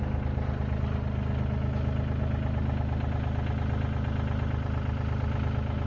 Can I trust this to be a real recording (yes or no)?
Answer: yes